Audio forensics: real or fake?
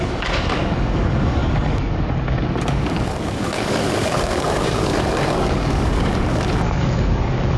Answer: fake